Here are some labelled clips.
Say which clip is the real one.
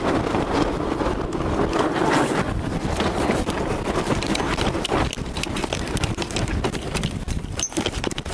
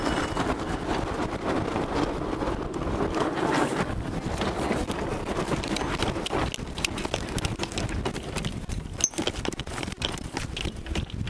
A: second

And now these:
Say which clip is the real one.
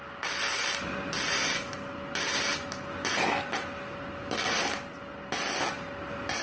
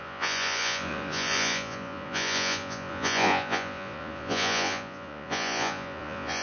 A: first